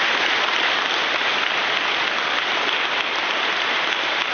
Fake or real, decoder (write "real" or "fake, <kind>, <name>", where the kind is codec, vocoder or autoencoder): real